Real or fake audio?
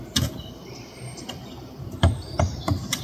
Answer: fake